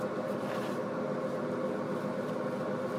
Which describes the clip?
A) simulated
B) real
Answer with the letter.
B